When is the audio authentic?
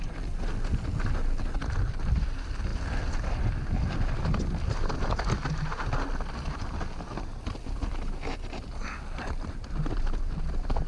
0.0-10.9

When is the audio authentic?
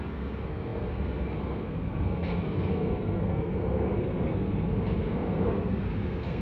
none